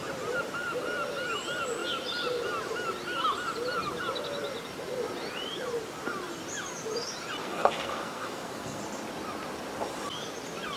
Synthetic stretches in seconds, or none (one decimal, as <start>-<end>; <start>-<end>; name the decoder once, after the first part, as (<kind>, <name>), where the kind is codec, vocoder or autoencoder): 7.4-8.8 (codec, SNAC)